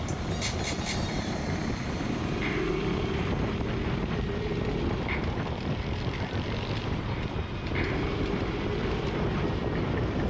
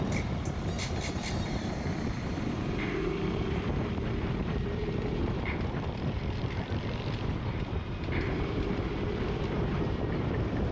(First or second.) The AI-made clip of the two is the second